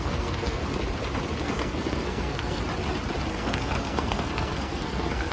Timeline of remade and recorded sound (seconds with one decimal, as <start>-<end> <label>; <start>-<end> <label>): 0.0-0.6 remade; 0.6-1.4 recorded; 1.4-2.6 remade; 2.6-3.3 recorded; 3.3-5.3 remade